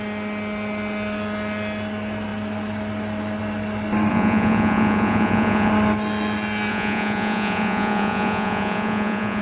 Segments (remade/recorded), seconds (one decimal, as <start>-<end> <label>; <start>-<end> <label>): 0.0-4.1 recorded; 4.1-5.7 remade; 5.7-6.7 recorded; 6.7-9.4 remade